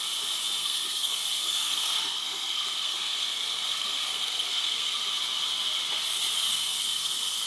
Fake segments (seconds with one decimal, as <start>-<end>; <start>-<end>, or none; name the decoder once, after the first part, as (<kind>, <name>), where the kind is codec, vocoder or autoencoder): 0.6-5.1 (codec, SNAC); 6.5-7.5